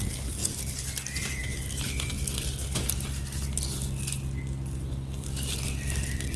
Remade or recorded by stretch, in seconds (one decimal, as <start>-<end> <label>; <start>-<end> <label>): 0.0-6.4 recorded